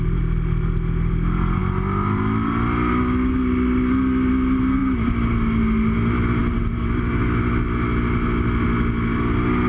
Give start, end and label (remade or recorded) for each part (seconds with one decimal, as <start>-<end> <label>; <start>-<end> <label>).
0.0-9.7 recorded